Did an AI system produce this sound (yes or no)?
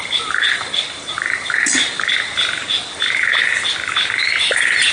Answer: no